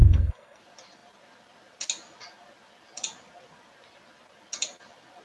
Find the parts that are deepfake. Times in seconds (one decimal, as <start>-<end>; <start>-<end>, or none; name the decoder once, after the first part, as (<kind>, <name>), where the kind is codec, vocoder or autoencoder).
0.0-0.6 (codec, SNAC)